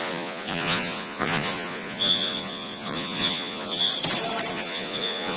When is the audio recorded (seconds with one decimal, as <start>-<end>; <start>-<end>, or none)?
3.9-4.5